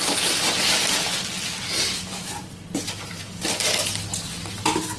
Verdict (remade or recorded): recorded